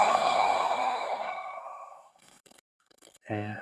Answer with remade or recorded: remade